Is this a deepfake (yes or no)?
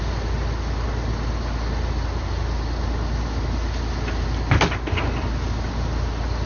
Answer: no